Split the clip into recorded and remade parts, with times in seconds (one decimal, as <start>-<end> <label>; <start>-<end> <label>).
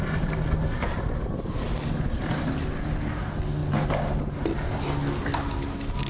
0.0-6.1 recorded